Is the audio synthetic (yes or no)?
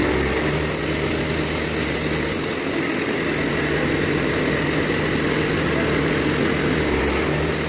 no